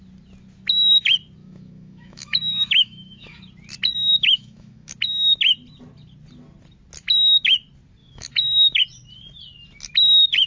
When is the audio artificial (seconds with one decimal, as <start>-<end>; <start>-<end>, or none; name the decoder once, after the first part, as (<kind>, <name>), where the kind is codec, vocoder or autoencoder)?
1.4-3.4 (autoencoder, DAC-VAE); 4.1-4.9; 8.0-8.8